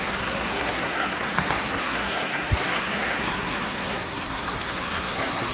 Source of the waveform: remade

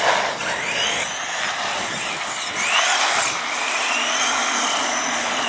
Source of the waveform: recorded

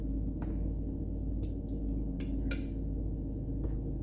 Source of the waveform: recorded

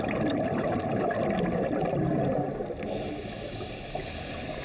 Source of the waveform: recorded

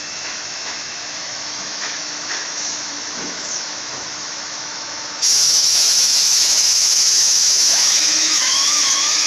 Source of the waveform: remade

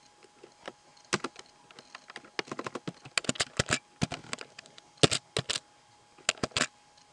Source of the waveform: recorded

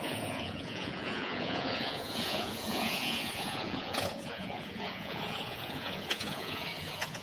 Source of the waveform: remade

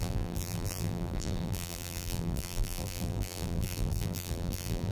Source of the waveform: remade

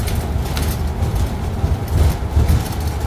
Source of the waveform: recorded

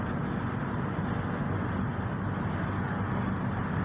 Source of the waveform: recorded